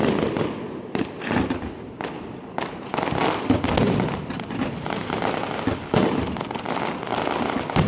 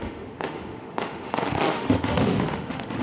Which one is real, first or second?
first